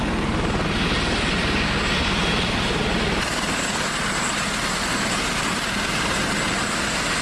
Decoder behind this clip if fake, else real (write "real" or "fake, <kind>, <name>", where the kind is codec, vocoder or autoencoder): real